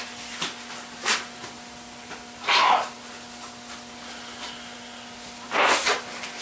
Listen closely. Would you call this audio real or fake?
real